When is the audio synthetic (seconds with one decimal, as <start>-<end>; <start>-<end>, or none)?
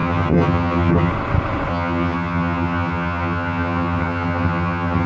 0.0-1.1; 1.7-5.1